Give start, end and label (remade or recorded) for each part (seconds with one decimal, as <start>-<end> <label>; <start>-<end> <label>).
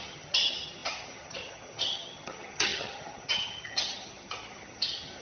0.0-5.2 remade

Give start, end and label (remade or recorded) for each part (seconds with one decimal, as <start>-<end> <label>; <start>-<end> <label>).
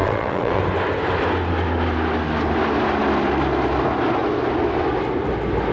0.0-0.6 remade; 0.6-5.7 recorded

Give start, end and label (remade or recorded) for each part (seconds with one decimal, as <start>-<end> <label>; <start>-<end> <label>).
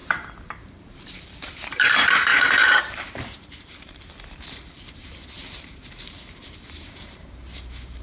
0.0-8.0 remade